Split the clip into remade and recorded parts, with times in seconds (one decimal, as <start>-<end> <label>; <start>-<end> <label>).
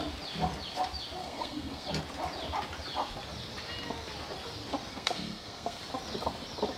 0.0-1.2 recorded; 1.2-1.9 remade; 1.9-4.9 recorded; 4.9-5.8 remade; 5.8-6.8 recorded